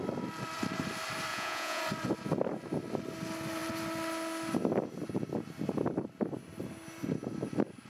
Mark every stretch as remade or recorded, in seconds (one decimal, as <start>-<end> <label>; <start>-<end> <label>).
0.0-1.3 recorded; 1.3-1.8 remade; 1.8-7.9 recorded